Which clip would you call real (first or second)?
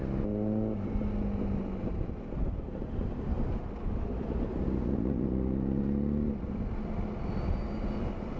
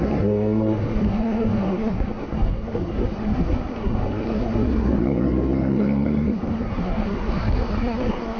first